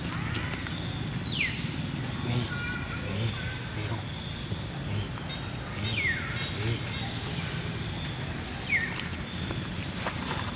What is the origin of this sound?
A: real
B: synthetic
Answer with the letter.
A